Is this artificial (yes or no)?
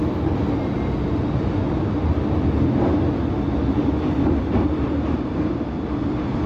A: no